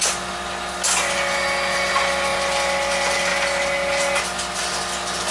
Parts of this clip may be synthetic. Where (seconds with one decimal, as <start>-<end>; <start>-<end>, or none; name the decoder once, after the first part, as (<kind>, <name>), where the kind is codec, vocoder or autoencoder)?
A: none